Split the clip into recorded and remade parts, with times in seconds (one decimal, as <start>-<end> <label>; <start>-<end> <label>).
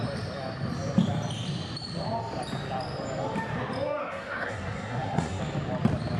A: 0.0-4.0 recorded; 4.0-5.4 remade; 5.4-6.2 recorded